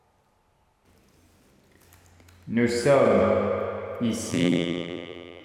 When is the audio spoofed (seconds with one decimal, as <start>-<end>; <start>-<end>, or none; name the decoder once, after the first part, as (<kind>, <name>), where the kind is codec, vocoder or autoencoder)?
4.3-5.4 (vocoder, BigVGAN v2)